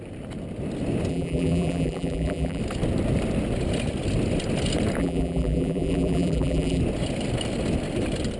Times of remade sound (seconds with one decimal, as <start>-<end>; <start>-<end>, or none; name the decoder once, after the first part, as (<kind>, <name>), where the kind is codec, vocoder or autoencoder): 1.1-2.6 (vocoder, BigVGAN v2); 5.0-6.8